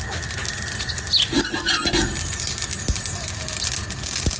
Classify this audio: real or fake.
real